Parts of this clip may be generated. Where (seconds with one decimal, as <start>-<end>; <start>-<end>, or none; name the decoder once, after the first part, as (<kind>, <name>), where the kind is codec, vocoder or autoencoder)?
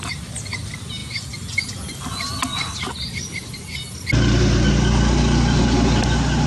none